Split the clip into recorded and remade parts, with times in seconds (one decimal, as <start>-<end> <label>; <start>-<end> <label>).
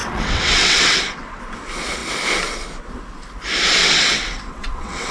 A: 0.0-1.4 remade; 1.4-3.8 recorded; 3.8-5.1 remade